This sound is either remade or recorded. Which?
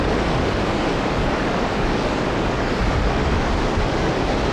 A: remade